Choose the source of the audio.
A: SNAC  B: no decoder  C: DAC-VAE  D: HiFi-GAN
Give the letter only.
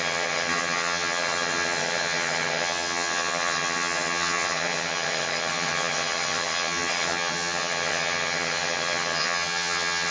D